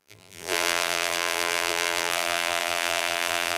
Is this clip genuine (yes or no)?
no